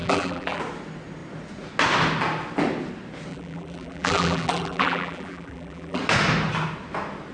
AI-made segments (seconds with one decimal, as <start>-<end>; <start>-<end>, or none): 0.0-0.6; 3.3-6.0